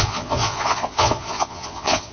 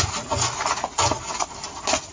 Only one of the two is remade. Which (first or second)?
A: first